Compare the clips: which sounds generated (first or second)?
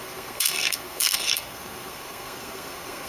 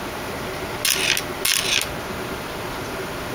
first